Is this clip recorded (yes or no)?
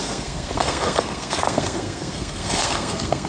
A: no